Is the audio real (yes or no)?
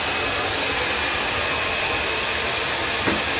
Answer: yes